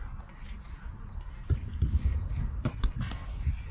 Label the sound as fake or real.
real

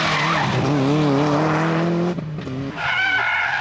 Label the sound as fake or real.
real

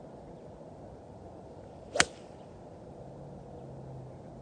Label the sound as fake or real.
real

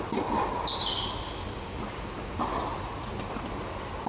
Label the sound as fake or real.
real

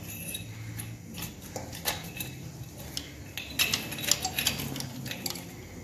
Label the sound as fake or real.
real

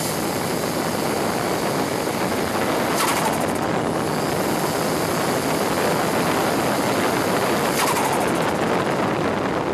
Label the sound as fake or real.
real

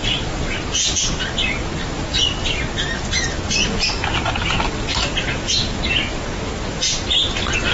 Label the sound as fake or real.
real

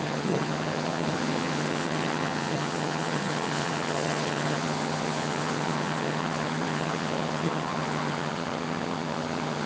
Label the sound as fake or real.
fake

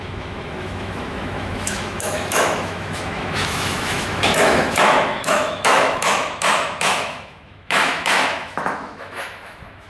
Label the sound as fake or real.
fake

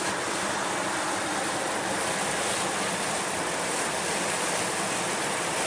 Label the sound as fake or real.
fake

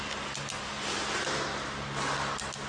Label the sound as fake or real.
real